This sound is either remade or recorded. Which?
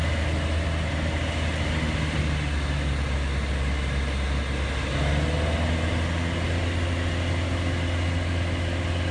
recorded